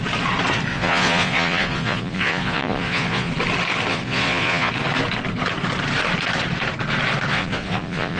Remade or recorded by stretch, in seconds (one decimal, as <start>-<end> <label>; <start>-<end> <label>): 0.0-0.7 recorded; 0.7-3.3 remade; 3.3-3.9 recorded; 3.9-4.7 remade; 4.7-7.3 recorded; 7.3-8.2 remade

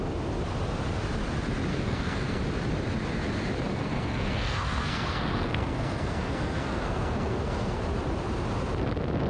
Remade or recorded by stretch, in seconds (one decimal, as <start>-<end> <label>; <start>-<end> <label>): 0.0-1.7 recorded; 1.7-2.4 remade; 2.4-3.7 recorded; 3.7-7.8 remade; 7.8-9.3 recorded